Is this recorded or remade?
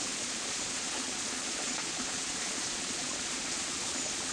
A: remade